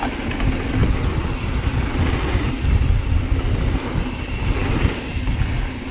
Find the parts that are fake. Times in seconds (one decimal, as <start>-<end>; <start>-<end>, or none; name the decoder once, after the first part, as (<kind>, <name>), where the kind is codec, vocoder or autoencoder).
none

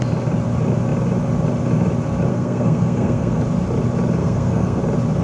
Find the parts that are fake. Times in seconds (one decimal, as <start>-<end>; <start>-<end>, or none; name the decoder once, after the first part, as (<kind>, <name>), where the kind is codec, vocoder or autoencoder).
2.3-3.4 (codec, SNAC); 4.2-4.8

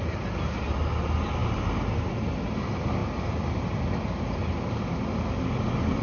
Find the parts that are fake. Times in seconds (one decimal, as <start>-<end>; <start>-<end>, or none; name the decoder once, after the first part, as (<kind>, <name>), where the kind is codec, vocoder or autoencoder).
none

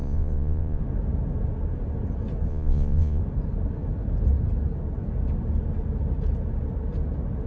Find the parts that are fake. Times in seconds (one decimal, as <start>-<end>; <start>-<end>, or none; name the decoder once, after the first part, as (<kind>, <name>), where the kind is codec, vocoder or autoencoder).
0.0-0.8 (vocoder, Vocos); 2.5-3.2

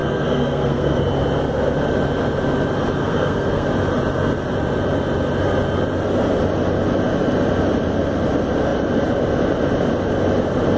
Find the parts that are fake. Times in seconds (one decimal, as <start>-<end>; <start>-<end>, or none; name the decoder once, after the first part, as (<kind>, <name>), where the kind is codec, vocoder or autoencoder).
0.0-1.0 (codec, SNAC); 3.0-3.7